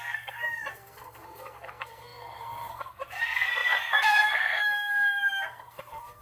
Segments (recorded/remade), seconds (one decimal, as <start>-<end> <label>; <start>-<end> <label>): 0.0-6.2 remade